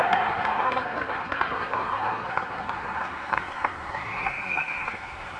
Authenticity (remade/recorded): remade